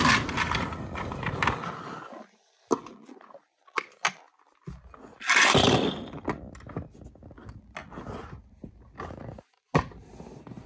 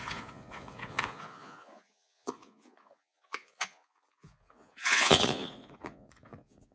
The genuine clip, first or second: first